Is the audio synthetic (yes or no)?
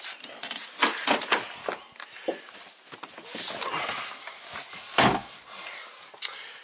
no